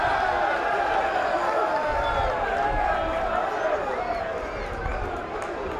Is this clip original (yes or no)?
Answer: yes